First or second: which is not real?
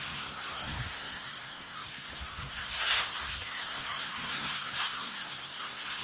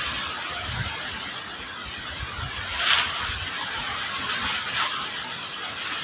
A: first